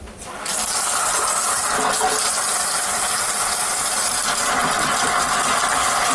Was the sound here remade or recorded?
recorded